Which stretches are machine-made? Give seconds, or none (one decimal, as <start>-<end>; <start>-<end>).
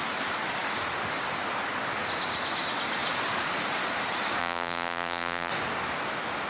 4.4-5.5